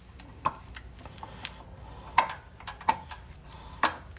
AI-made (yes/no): no